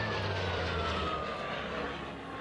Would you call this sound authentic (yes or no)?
yes